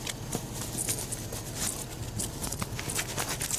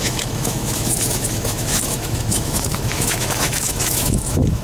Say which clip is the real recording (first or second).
first